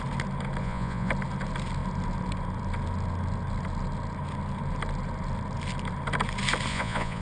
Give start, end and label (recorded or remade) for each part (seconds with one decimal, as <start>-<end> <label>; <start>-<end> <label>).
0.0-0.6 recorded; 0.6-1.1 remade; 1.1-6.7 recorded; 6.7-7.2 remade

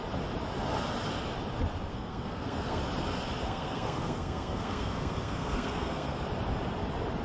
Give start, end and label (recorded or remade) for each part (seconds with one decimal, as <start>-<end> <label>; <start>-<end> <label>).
0.0-1.9 recorded; 1.9-2.8 remade; 2.8-3.4 recorded; 3.4-6.2 remade; 6.2-7.2 recorded

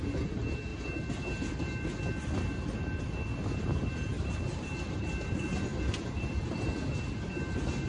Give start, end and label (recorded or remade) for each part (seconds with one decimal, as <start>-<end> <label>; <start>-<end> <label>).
0.0-4.1 recorded; 4.1-5.1 remade; 5.1-5.7 recorded; 5.7-6.3 remade; 6.3-7.9 recorded

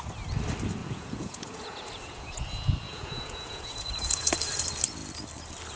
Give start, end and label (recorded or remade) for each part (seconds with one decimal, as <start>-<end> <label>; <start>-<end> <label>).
0.0-0.8 recorded; 0.8-4.3 remade; 4.3-5.8 recorded

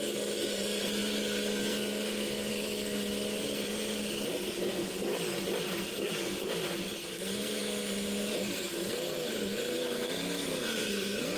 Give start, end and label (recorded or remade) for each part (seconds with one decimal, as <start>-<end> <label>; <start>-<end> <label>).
0.0-5.1 remade; 5.1-5.6 recorded; 5.6-11.4 remade

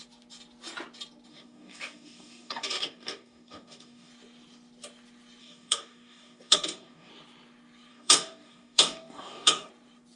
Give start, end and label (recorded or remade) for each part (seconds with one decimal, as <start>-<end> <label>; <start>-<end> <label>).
0.0-1.3 recorded; 1.3-4.1 remade; 4.1-5.4 recorded; 5.4-7.1 remade; 7.1-7.9 recorded; 7.9-9.7 remade; 9.7-10.2 recorded

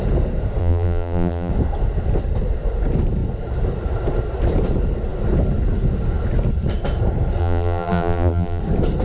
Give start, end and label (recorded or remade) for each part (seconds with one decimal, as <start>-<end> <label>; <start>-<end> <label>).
0.0-0.6 recorded; 0.6-1.5 remade; 1.5-7.4 recorded; 7.4-8.6 remade; 8.6-9.0 recorded